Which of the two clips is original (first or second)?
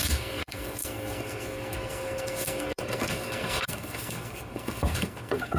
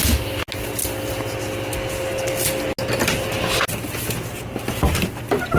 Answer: second